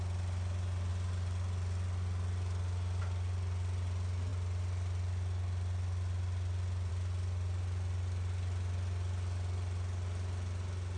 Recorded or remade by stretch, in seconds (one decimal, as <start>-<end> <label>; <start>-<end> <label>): 0.0-11.0 recorded